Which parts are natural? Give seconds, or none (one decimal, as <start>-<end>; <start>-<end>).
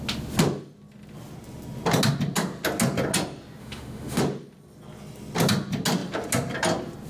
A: 0.0-3.6; 4.2-7.1